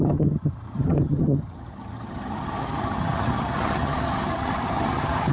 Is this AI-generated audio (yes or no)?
yes